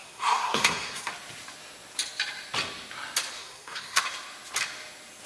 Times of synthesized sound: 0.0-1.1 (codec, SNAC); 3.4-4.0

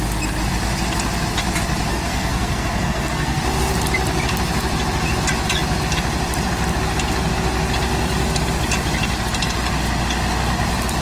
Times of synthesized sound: 1.9-3.4 (codec, SNAC)

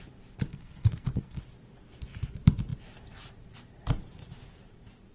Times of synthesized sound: 0.5-1.4 (codec, SNAC)

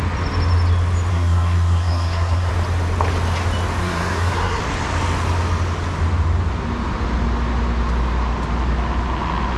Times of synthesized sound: 1.1-2.5 (codec, SNAC); 3.8-4.6

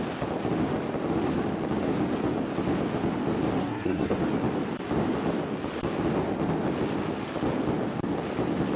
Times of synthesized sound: 3.6-4.2 (codec, SNAC)